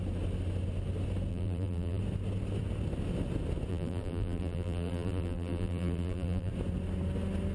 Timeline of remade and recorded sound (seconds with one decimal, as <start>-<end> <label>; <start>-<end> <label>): 0.0-1.3 recorded; 1.3-2.0 remade; 2.0-3.7 recorded; 3.7-6.5 remade; 6.5-7.5 recorded

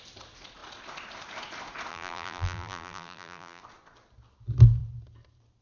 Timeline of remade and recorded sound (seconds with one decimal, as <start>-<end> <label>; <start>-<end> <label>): 0.0-1.9 recorded; 1.9-3.6 remade; 3.6-5.6 recorded

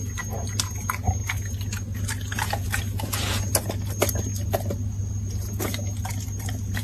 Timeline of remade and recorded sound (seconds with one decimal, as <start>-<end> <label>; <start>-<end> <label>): 0.0-6.8 recorded

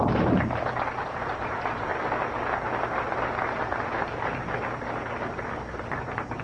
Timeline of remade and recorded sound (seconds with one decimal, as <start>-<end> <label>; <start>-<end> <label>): 0.0-1.9 remade; 1.9-5.7 recorded; 5.7-6.4 remade

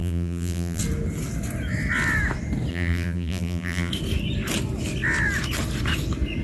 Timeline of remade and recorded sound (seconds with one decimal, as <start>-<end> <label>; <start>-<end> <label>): 0.0-0.8 remade; 0.8-2.7 recorded; 2.7-3.9 remade; 3.9-6.4 recorded

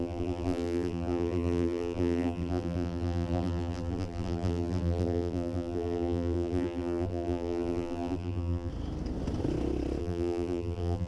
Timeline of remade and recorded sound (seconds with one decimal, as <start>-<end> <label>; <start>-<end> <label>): 0.0-8.7 remade; 8.7-10.0 recorded; 10.0-11.1 remade

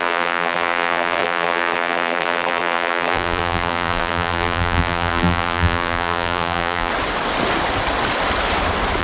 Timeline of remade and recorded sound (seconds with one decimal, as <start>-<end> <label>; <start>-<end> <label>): 0.0-6.9 remade; 6.9-9.0 recorded